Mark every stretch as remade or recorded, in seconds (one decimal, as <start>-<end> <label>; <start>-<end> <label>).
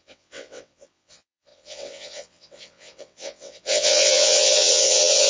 0.0-5.3 remade